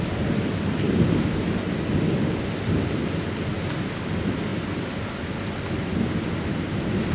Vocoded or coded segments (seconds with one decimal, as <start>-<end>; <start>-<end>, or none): none